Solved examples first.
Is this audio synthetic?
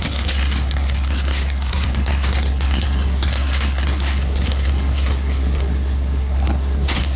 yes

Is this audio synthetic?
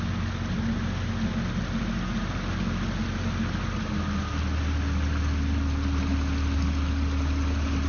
no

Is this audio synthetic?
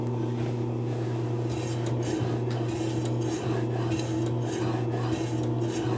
no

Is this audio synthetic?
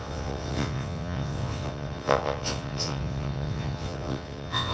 yes